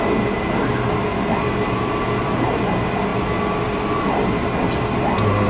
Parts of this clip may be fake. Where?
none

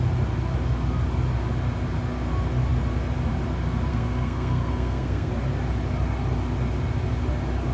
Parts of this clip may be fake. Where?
3.9-5.3 (codec, SNAC)

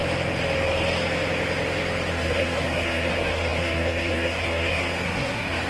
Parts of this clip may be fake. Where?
2.1-5.7 (codec, SNAC)

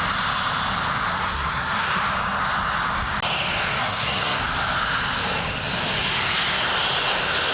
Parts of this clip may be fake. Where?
1.1-2.0 (codec, SNAC); 3.8-4.4

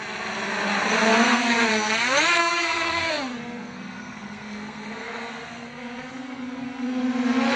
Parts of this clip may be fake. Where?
1.1-1.7 (codec, SNAC); 2.4-7.0

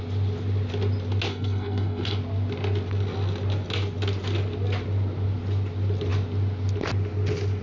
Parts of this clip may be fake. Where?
1.3-2.2 (codec, SNAC)

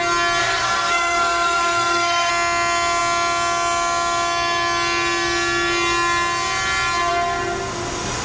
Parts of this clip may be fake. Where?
0.4-2.3 (codec, SNAC)